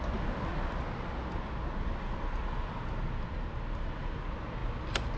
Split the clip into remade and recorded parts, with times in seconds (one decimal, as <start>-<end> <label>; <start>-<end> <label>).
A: 0.0-5.2 recorded